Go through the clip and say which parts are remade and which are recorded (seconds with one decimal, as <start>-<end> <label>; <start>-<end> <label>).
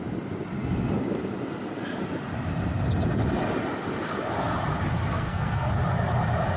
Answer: 0.0-5.1 recorded; 5.1-5.7 remade; 5.7-6.6 recorded